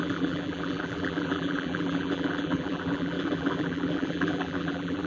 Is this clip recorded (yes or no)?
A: no